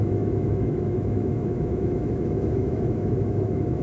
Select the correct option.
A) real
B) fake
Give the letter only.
B